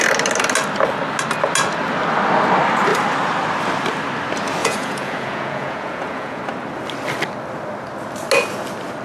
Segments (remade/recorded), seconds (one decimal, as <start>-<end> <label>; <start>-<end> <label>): 0.0-4.6 recorded; 4.6-6.4 remade; 6.4-9.0 recorded